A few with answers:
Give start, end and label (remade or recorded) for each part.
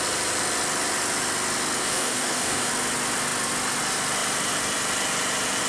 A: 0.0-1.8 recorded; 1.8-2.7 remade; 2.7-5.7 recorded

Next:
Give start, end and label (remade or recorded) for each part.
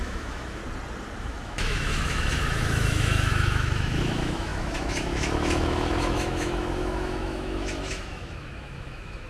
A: 0.0-0.6 remade; 0.6-1.2 recorded; 1.2-9.3 remade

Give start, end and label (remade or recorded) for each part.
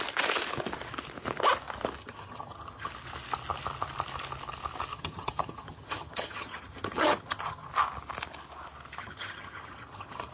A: 0.0-2.0 recorded; 2.0-2.9 remade; 2.9-4.9 recorded; 4.9-7.7 remade; 7.7-9.0 recorded; 9.0-10.3 remade